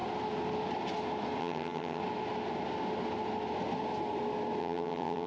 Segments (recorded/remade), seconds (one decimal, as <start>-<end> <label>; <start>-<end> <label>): 0.0-1.4 recorded; 1.4-2.0 remade; 2.0-4.6 recorded; 4.6-5.3 remade